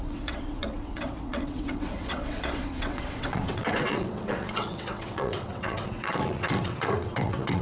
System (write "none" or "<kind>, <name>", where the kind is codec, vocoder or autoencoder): vocoder, WaveNeXt